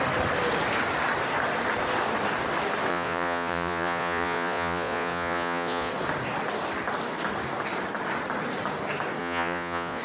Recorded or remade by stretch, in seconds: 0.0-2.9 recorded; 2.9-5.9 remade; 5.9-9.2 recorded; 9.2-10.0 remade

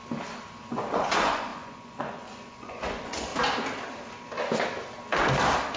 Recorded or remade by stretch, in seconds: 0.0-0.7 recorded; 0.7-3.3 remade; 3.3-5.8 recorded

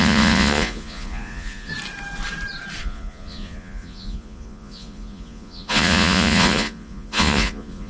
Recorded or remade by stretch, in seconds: 0.0-1.7 remade; 1.7-2.8 recorded; 2.8-7.9 remade